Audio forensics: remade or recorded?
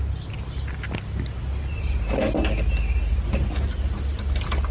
recorded